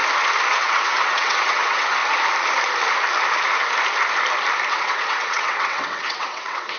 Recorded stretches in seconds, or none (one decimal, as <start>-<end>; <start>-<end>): 0.0-0.5; 2.0-4.7